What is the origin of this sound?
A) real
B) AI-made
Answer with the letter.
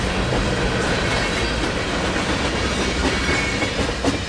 A